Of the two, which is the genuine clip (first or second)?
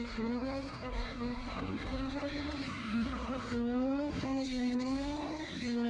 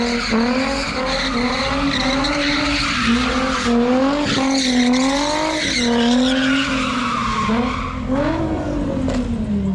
second